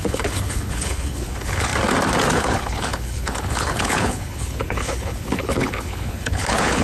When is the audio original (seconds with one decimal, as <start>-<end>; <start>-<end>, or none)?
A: 1.7-2.3